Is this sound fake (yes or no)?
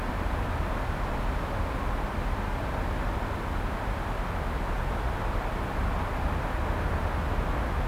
no